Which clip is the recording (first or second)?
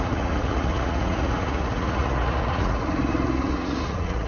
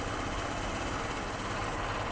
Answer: second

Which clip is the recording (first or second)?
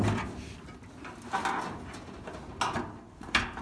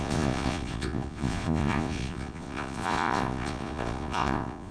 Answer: first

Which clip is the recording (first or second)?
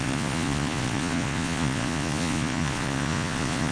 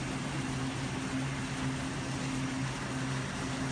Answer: second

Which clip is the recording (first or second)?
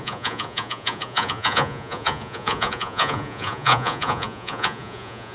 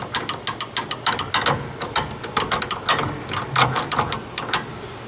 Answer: second